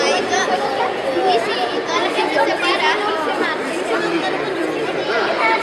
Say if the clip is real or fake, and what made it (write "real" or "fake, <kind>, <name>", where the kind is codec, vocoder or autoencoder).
real